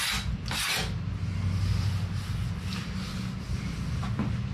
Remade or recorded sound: recorded